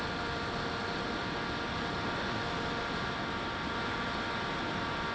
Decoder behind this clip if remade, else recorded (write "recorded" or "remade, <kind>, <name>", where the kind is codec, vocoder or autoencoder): recorded